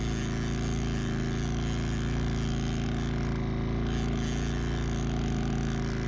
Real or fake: real